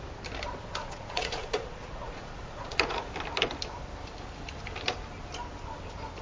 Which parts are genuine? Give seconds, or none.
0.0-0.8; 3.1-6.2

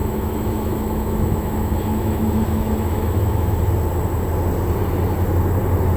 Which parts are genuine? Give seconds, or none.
3.6-6.0

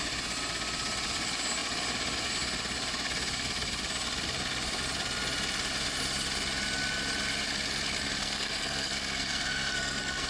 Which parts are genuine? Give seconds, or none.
0.0-8.2